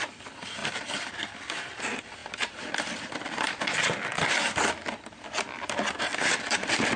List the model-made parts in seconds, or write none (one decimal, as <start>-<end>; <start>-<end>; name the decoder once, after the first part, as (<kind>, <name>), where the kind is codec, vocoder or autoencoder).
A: none